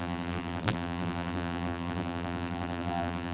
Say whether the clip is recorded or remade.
remade